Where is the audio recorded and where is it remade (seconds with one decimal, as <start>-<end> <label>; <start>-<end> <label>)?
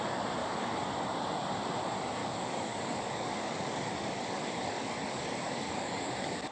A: 0.0-0.4 recorded; 0.4-0.9 remade; 0.9-2.2 recorded; 2.2-6.1 remade; 6.1-6.5 recorded